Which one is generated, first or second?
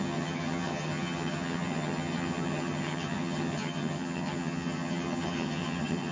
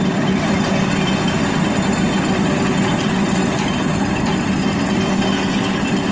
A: first